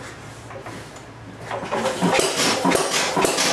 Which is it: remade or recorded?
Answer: recorded